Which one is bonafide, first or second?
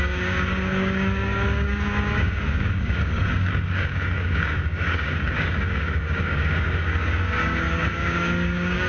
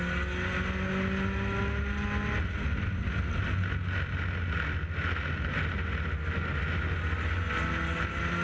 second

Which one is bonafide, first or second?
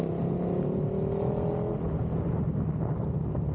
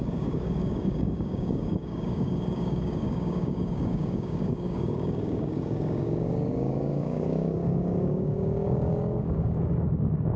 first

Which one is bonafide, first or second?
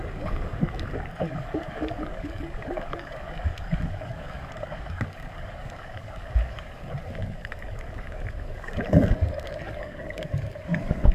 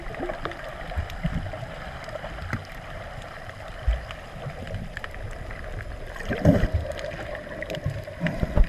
second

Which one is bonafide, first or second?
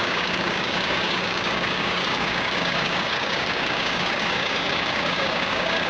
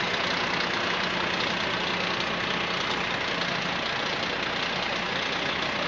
second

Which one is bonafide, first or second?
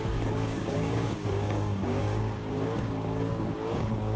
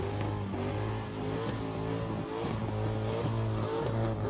second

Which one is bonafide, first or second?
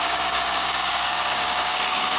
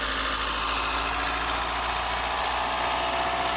second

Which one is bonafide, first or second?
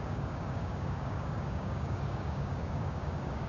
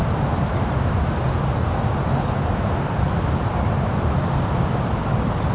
second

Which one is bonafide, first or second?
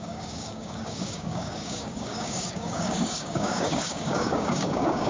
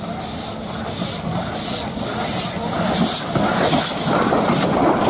second